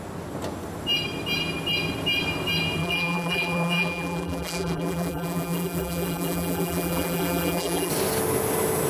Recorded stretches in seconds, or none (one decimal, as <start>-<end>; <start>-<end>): 0.0-2.8; 7.9-8.9